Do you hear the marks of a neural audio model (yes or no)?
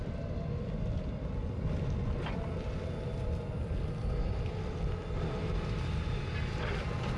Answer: no